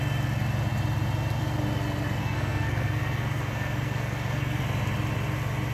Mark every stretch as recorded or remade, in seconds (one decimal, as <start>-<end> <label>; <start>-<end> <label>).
0.0-2.2 recorded; 2.2-4.6 remade; 4.6-5.7 recorded